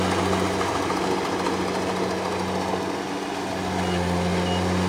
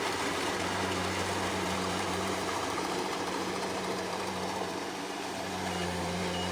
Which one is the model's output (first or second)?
second